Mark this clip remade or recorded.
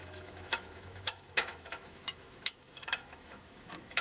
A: remade